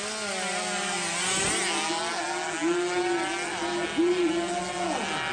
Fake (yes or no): no